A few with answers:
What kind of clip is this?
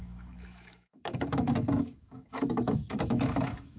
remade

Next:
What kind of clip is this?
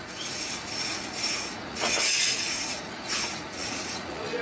remade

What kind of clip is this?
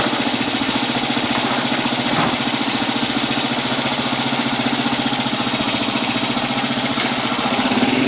recorded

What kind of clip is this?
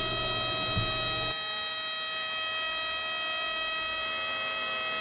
recorded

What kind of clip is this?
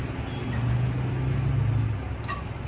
recorded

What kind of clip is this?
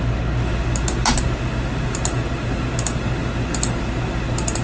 recorded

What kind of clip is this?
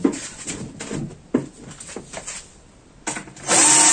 recorded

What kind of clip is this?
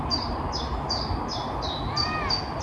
recorded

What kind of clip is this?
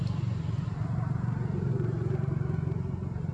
recorded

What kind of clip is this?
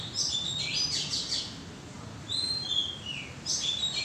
recorded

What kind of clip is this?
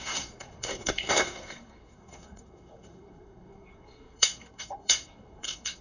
remade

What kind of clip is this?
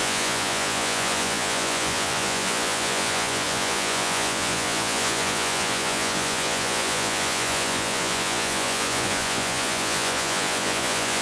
remade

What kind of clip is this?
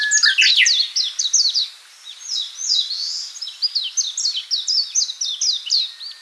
recorded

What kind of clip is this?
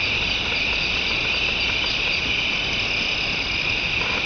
recorded